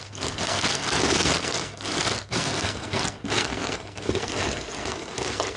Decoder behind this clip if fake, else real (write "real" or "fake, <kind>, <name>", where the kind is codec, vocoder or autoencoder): fake, codec, SNAC